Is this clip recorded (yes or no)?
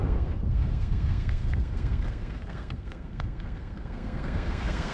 no